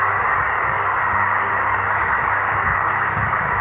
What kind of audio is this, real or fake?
fake